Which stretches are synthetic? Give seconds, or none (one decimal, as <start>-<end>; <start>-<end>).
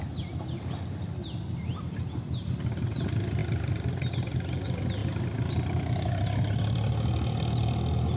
1.2-2.2; 3.4-4.1; 5.0-6.1